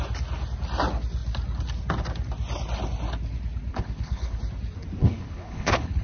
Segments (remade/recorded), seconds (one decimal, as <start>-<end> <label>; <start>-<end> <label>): 0.0-3.7 recorded; 3.7-4.4 remade; 4.4-5.0 recorded; 5.0-6.0 remade